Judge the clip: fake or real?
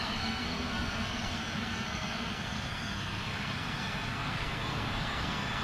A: fake